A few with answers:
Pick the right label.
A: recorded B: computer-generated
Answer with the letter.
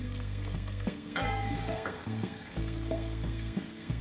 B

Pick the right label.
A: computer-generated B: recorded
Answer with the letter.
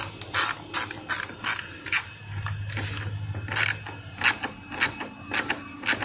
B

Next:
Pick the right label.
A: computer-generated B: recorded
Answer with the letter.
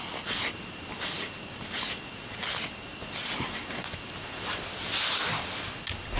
B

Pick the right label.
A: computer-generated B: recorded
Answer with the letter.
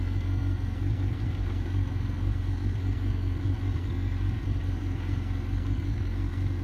A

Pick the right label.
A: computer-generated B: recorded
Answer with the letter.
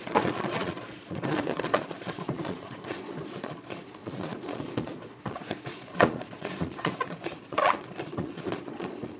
A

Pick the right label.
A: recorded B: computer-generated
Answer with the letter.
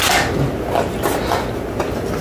A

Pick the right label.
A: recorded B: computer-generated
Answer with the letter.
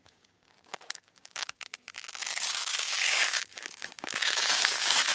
B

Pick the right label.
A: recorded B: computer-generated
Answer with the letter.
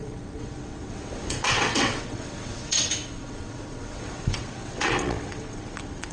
B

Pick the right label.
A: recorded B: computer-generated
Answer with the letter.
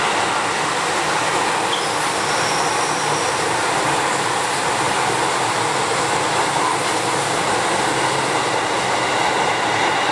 A